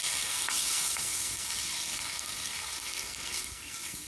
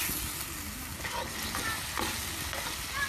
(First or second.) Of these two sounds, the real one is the second